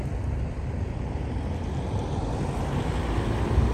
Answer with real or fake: real